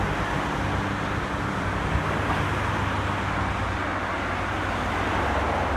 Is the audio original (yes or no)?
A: yes